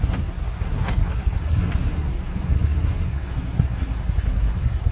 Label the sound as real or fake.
fake